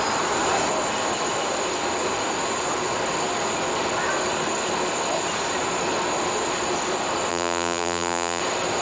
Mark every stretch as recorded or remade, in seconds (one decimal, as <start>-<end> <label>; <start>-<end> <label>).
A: 0.0-7.3 recorded; 7.3-8.4 remade; 8.4-8.8 recorded